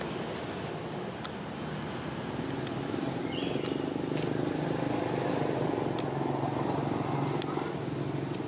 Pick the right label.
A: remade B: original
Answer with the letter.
B